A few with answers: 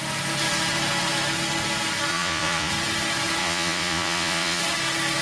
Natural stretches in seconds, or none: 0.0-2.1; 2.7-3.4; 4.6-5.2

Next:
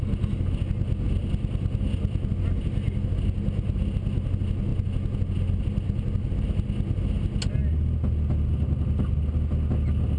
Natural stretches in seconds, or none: 0.0-10.2

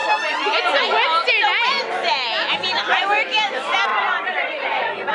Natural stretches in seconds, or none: 0.0-3.9

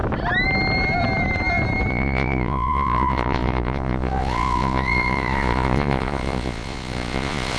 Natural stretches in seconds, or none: 0.0-1.9